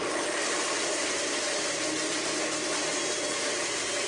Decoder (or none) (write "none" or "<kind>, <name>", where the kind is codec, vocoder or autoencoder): none